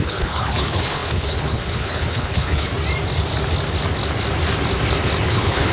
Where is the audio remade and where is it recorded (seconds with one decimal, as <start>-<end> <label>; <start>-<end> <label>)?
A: 0.0-2.7 remade; 2.7-5.3 recorded; 5.3-5.7 remade